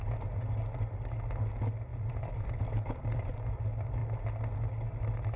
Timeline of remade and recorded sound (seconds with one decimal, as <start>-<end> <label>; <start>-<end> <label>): 0.0-1.9 recorded; 1.9-3.6 remade; 3.6-5.4 recorded